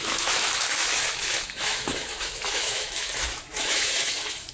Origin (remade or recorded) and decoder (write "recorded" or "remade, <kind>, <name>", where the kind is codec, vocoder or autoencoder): remade, autoencoder, DAC-VAE